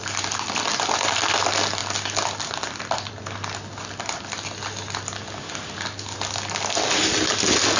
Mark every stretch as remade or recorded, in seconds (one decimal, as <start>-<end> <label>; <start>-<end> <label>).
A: 0.0-7.8 recorded